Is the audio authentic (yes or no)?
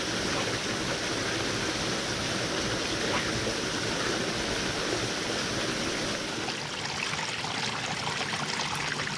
yes